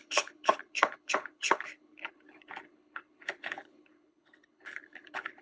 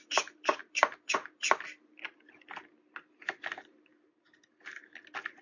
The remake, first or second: first